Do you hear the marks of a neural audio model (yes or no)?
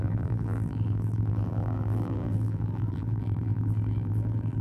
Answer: yes